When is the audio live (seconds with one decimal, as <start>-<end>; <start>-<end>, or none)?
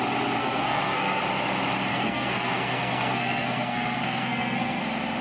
0.0-0.4; 1.2-1.9; 4.8-5.2